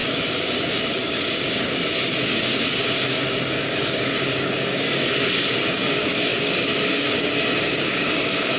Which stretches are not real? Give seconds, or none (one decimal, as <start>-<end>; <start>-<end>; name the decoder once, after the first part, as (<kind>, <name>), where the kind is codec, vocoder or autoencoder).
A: 0.0-5.0 (codec, DAC); 5.7-8.6